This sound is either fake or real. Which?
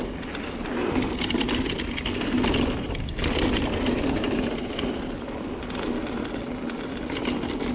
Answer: real